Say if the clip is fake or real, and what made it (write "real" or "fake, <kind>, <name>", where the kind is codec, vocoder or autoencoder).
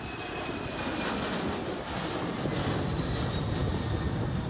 real